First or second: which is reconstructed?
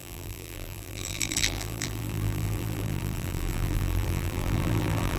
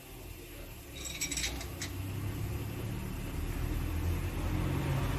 first